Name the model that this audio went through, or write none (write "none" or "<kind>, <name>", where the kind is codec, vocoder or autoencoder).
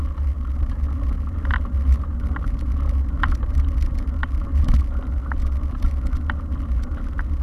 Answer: none